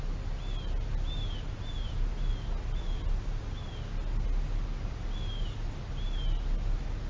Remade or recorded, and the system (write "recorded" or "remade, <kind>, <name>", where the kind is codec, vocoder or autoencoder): recorded